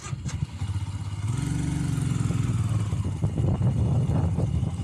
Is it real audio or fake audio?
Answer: real